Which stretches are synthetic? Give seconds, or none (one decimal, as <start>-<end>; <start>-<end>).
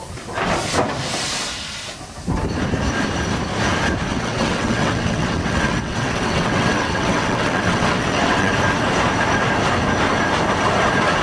4.1-8.5